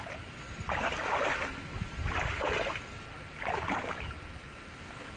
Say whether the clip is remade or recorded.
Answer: recorded